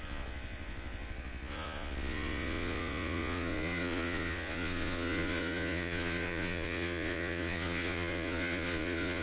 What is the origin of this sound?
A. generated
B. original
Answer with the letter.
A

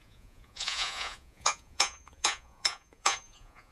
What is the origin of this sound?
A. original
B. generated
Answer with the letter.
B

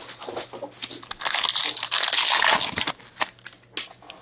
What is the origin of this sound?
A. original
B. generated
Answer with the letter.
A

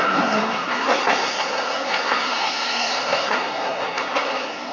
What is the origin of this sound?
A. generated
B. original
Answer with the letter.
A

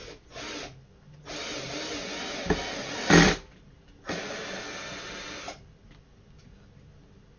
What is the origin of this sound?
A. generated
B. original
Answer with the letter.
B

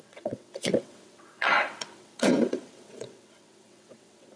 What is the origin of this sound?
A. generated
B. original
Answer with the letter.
A